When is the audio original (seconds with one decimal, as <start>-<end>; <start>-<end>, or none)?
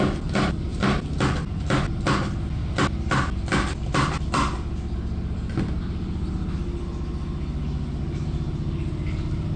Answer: 0.0-9.6